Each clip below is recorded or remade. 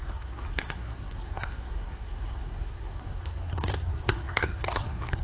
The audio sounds remade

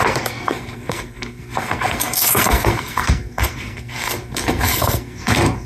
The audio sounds remade